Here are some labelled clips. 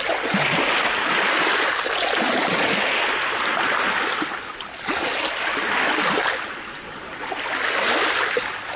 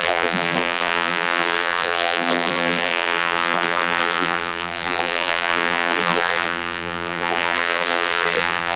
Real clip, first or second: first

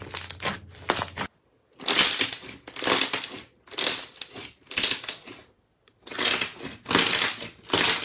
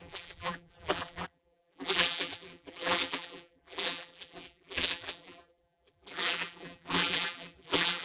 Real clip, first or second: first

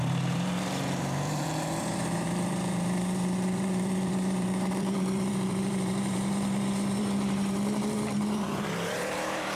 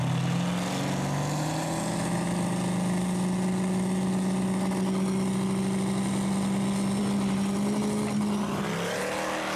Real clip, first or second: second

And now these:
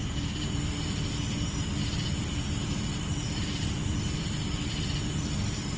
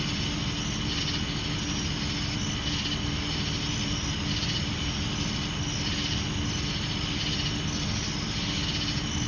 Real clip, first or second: second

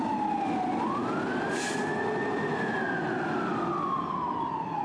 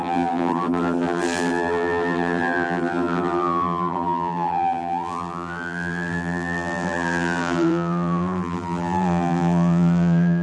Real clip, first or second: first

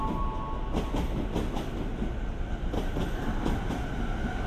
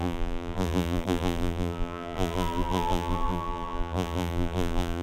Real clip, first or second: first